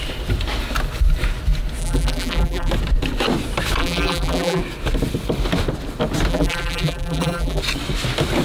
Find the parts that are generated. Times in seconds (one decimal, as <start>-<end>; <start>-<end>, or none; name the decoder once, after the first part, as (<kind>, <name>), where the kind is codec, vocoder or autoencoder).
1.8-2.7 (vocoder, BigVGAN v2); 3.8-4.6; 6.3-7.6